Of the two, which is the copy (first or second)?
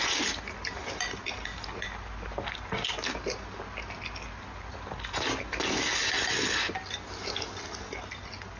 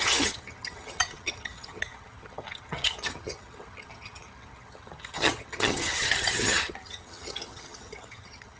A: second